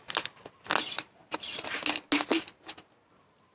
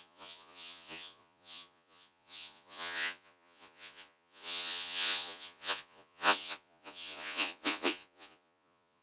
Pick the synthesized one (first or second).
second